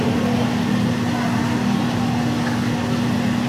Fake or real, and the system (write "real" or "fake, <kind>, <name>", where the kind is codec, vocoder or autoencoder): real